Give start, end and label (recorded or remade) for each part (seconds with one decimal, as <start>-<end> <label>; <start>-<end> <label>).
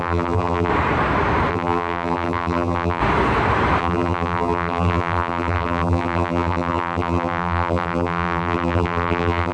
0.0-0.7 remade; 0.7-1.5 recorded; 1.5-3.0 remade; 3.0-3.8 recorded; 3.8-9.5 remade